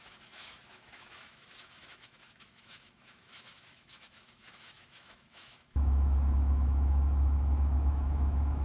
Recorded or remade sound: remade